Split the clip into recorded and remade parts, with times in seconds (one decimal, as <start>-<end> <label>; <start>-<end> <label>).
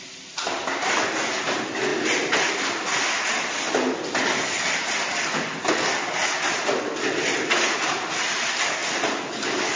0.0-9.8 recorded